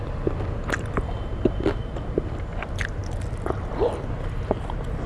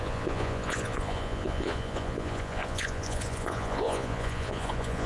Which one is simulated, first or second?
second